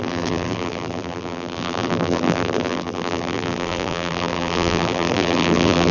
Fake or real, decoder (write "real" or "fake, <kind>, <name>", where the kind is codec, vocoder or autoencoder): fake, vocoder, BigVGAN v2